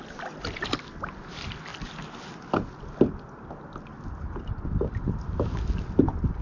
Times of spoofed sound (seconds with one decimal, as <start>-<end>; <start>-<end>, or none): none